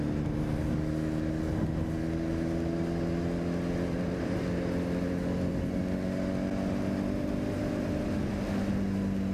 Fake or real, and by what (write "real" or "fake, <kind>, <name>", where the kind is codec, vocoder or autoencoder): real